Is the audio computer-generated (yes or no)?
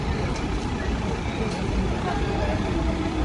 no